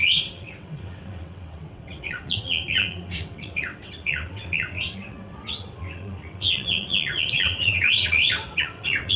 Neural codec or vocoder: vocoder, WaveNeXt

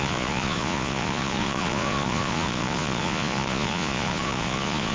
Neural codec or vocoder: vocoder, Vocos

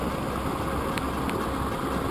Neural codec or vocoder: none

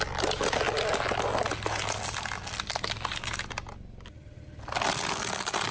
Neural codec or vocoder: none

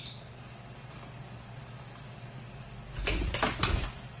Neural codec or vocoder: none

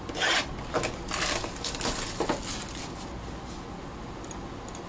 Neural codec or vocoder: none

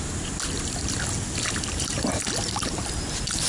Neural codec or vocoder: none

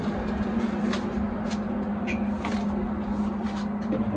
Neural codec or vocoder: none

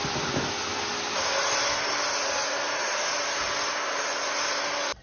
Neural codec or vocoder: none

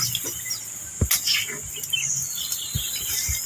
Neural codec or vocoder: none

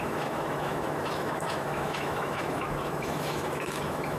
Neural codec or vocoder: autoencoder, DAC-VAE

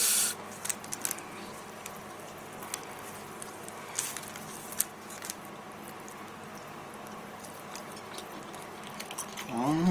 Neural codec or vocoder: none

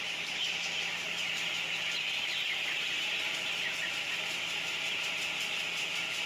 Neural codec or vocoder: vocoder, BigVGAN v2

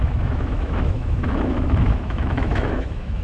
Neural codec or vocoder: autoencoder, DAC-VAE